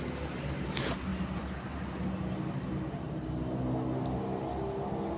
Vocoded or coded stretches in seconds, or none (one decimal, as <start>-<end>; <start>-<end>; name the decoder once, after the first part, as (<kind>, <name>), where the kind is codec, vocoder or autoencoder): none